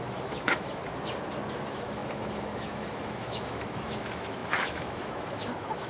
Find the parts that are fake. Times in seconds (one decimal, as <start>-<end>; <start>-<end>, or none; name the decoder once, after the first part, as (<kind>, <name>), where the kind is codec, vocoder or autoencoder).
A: 0.0-0.8 (autoencoder, DAC-VAE); 1.5-5.9